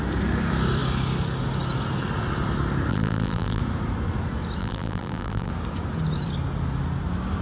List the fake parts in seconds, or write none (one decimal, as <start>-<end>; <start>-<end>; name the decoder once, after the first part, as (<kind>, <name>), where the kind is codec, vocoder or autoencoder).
2.9-3.6 (vocoder, BigVGAN v2); 4.6-5.5